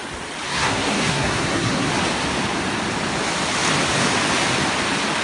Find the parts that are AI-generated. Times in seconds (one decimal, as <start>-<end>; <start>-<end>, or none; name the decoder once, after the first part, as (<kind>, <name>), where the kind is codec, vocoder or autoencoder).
0.5-1.9 (codec, SNAC)